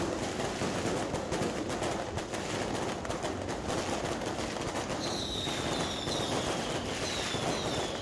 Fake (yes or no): no